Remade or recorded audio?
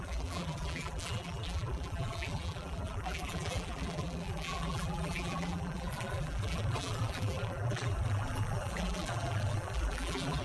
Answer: remade